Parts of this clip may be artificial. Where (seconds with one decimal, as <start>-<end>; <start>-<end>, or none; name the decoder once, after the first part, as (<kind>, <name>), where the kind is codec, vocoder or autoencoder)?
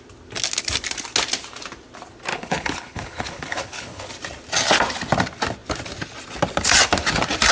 2.3-4.1 (codec, HILCodec)